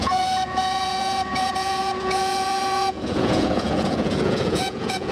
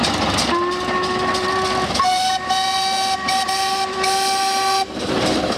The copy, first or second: first